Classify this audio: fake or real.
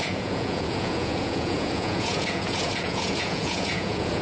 fake